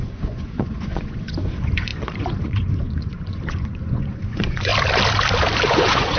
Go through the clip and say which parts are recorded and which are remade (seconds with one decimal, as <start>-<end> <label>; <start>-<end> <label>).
0.0-4.7 remade; 4.7-5.7 recorded; 5.7-6.2 remade